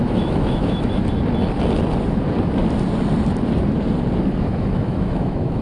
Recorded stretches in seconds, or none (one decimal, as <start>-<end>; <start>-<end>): 1.0-4.4